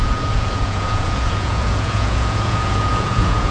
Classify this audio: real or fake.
fake